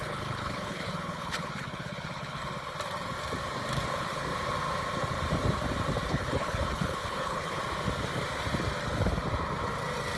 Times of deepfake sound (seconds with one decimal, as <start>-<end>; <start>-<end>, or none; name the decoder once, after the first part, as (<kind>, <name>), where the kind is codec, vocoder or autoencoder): 0.0-2.4 (codec, HILCodec); 3.9-4.3; 6.1-7.6